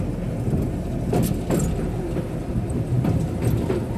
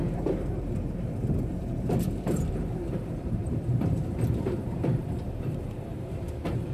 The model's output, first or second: second